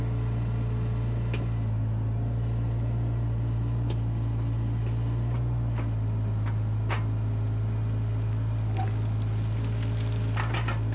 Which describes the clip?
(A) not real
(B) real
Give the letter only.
B